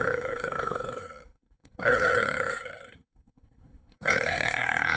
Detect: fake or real fake